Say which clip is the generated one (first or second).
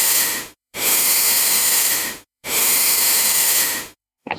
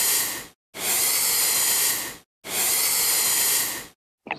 first